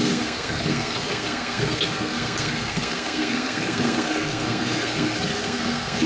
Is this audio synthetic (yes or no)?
yes